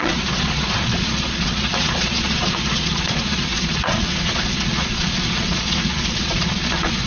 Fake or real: fake